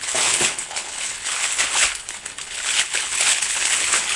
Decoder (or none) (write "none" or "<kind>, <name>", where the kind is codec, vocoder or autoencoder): codec, HILCodec